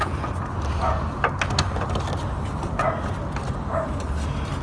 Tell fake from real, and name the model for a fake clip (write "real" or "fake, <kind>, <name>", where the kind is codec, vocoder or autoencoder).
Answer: real